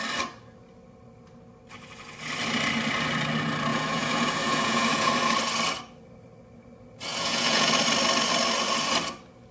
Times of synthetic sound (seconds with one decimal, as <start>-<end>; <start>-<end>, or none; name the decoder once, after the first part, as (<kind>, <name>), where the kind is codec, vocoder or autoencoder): 3.7-5.1 (vocoder, Vocos); 7.1-7.7